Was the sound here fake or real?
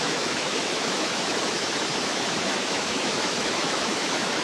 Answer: fake